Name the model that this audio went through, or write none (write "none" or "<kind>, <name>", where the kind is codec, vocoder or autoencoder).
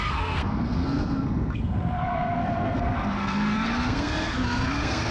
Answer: codec, SNAC